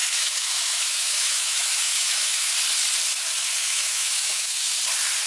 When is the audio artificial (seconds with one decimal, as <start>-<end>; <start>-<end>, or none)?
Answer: 0.0-2.5; 3.6-4.8